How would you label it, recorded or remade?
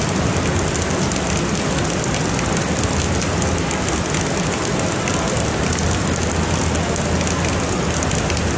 recorded